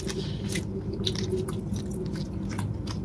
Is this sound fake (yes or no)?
no